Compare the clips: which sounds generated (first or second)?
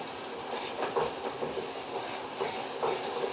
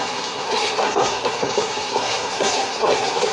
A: second